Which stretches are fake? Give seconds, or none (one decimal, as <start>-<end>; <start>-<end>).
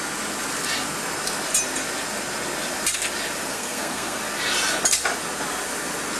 3.5-4.2